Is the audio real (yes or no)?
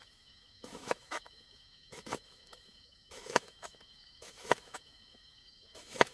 no